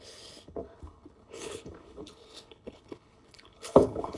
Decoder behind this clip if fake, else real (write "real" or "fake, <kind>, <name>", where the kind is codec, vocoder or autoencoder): fake, codec, HILCodec